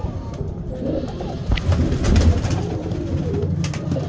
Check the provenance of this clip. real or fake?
real